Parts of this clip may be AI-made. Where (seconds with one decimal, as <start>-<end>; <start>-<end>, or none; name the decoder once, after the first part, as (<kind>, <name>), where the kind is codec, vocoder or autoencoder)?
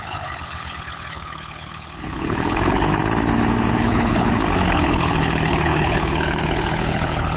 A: 0.0-3.0 (codec, HILCodec); 3.7-7.4